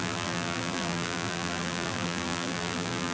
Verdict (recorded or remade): remade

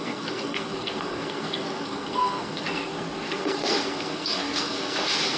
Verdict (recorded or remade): remade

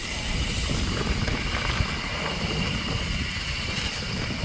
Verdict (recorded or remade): remade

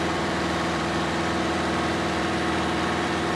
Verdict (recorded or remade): remade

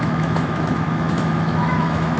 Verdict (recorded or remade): remade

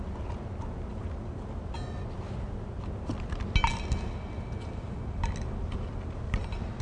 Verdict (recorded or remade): recorded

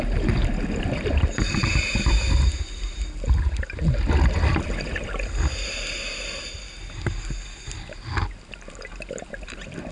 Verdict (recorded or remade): recorded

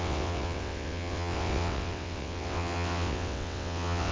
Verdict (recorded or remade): remade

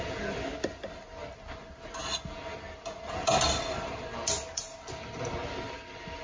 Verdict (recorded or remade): recorded